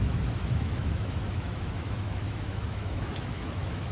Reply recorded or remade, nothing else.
remade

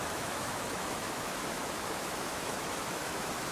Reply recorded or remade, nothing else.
remade